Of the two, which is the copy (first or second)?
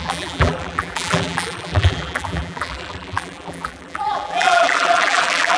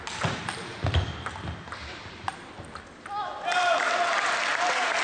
first